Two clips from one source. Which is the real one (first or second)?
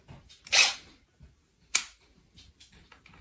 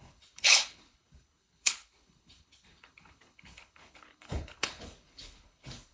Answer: first